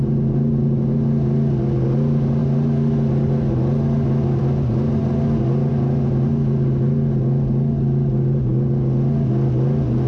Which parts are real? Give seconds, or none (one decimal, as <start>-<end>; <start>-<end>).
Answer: 0.0-10.1